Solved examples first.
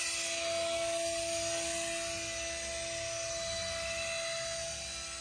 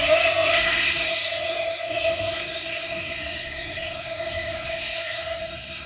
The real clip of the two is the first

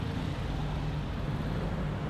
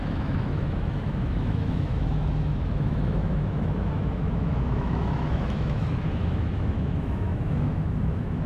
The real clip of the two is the first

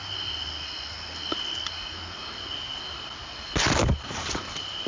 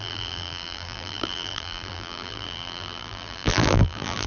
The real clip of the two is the first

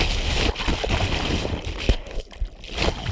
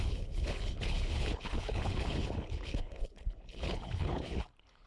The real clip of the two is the first